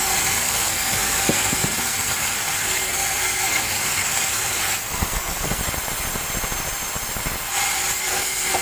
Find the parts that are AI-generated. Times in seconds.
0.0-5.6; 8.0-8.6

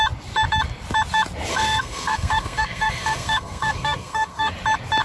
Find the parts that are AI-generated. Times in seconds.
1.5-4.5

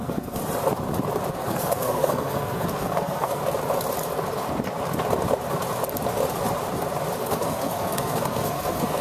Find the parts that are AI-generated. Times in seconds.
0.0-0.4; 1.3-3.4; 7.2-9.0

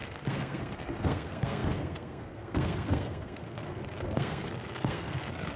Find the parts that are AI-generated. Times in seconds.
0.0-5.6

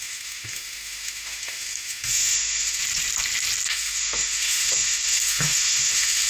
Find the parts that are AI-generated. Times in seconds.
0.0-2.8; 3.7-6.3

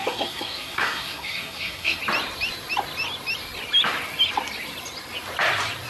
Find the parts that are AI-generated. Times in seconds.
0.0-2.0

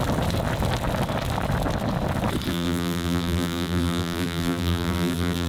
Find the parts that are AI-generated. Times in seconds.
2.5-5.5

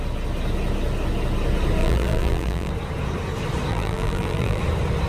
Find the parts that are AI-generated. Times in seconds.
1.8-2.7; 3.7-4.6